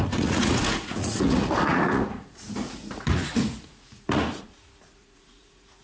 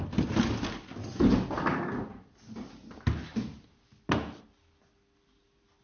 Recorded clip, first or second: second